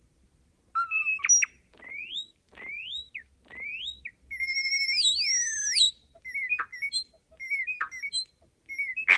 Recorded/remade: recorded